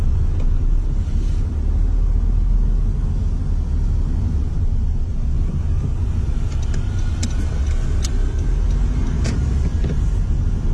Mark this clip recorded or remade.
recorded